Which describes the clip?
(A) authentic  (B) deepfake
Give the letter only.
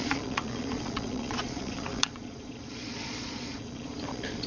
B